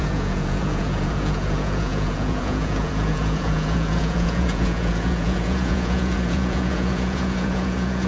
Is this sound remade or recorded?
remade